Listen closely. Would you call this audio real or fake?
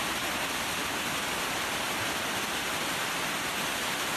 real